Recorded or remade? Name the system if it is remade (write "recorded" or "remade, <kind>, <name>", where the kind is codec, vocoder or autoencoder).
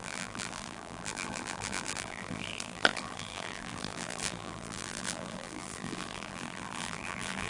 remade, vocoder, BigVGAN v2